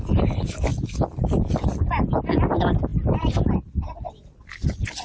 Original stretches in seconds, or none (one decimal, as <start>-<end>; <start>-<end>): 0.0-5.0